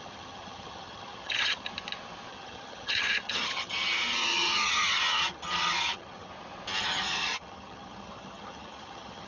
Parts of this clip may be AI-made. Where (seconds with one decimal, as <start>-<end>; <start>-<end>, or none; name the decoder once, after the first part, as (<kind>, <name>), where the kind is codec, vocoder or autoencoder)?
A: 0.0-1.7 (vocoder, HiFi-GAN); 2.3-6.3; 6.8-9.3

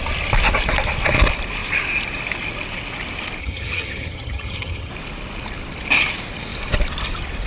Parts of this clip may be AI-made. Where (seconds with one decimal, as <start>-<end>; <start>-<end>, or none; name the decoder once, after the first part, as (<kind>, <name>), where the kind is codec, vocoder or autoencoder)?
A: 3.4-4.9 (vocoder, HiFi-GAN)

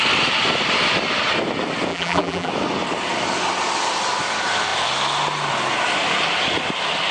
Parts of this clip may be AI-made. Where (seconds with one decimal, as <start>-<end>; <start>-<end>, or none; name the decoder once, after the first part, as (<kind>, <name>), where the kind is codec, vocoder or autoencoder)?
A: 1.9-2.5 (vocoder, BigVGAN v2)

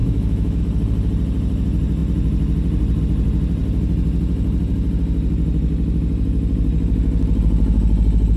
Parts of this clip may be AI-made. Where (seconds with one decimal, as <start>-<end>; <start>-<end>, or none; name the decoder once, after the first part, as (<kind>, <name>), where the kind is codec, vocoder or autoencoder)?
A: 0.0-0.6 (autoencoder, DAC-VAE)

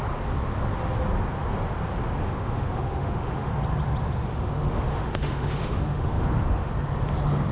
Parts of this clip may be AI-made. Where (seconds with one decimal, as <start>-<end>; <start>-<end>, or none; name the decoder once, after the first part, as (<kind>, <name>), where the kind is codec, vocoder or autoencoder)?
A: 2.2-3.5 (autoencoder, DAC-VAE); 4.3-6.7

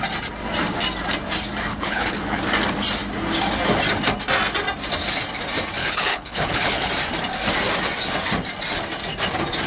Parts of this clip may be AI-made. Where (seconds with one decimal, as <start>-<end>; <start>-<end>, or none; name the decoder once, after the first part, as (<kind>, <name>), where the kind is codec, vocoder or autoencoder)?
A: 1.7-2.4 (codec, HILCodec); 5.8-6.9